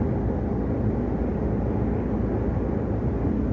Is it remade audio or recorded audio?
recorded